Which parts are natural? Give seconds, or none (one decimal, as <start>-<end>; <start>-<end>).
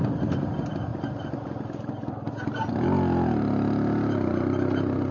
0.0-5.1